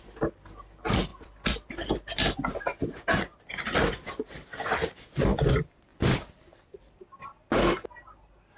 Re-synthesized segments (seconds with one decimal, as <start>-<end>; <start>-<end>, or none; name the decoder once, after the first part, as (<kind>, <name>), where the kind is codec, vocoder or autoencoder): 1.1-2.6 (vocoder, BigVGAN v2); 5.9-6.8